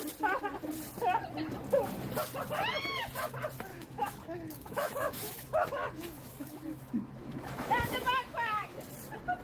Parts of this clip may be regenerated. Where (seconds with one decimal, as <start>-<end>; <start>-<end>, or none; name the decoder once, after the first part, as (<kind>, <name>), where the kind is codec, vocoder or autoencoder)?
3.7-8.8 (autoencoder, DAC-VAE)